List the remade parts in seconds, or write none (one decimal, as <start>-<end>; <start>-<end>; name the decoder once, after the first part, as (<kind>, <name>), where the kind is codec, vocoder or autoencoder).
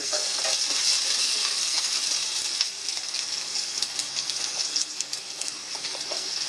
0.0-0.4 (codec, SNAC); 1.2-2.0; 2.5-6.5